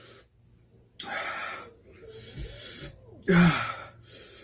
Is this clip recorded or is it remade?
recorded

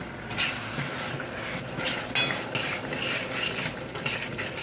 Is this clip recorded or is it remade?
recorded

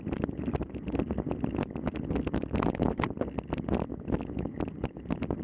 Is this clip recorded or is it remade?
recorded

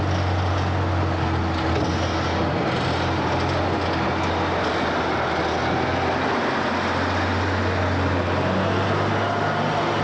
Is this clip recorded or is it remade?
recorded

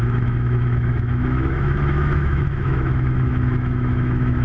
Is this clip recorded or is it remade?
remade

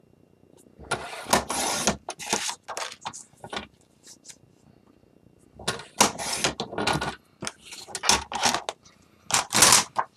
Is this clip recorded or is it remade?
recorded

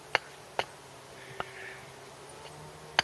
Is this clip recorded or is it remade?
recorded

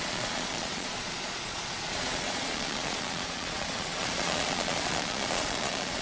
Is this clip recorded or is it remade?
remade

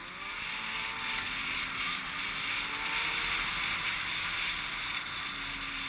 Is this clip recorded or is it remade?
recorded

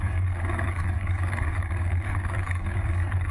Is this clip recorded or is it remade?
remade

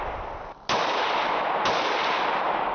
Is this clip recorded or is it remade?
recorded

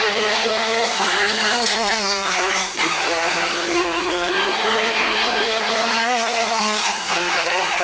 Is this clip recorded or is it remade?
remade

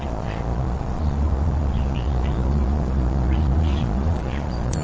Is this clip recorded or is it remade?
remade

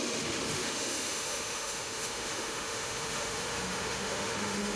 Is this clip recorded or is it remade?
remade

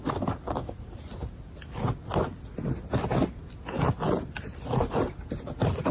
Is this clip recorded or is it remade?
recorded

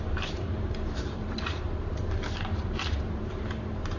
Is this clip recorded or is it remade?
remade